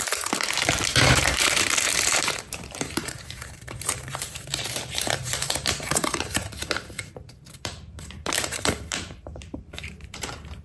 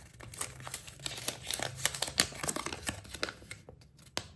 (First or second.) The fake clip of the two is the first